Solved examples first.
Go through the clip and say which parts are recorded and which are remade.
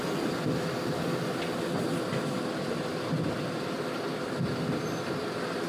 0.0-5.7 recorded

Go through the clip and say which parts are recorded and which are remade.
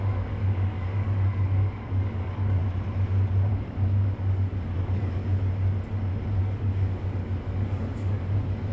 0.0-2.6 remade; 2.6-3.5 recorded; 3.5-5.2 remade; 5.2-6.4 recorded; 6.4-8.7 remade